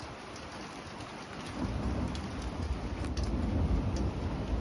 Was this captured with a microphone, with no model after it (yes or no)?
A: yes